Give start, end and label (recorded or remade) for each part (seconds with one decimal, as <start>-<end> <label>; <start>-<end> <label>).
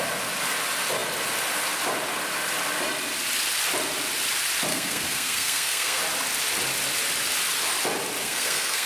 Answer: 0.0-4.7 recorded; 4.7-6.0 remade; 6.0-8.2 recorded; 8.2-8.9 remade